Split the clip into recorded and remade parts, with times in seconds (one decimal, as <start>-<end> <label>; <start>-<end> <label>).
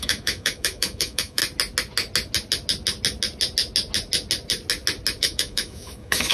0.0-1.4 remade; 1.4-5.2 recorded; 5.2-6.3 remade